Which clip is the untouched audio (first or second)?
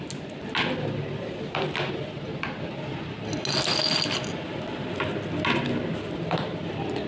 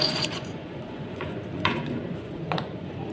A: first